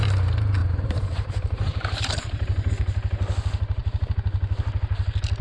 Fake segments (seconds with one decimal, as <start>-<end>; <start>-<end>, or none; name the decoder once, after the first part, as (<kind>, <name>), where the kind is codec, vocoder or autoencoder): 0.6-2.7 (vocoder, BigVGAN v2)